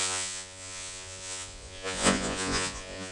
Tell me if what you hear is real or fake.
fake